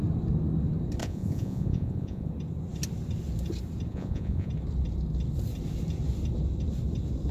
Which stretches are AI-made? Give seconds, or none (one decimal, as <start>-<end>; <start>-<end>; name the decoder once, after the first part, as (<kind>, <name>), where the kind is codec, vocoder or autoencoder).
1.0-2.3 (vocoder, Vocos); 3.9-4.5